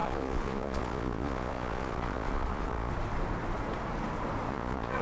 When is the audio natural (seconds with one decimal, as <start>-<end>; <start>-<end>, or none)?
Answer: 2.9-4.5

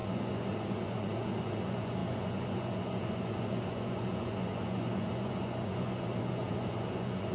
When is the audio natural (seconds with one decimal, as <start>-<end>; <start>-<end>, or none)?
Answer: none